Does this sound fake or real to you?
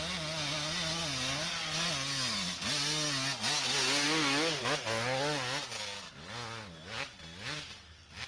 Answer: real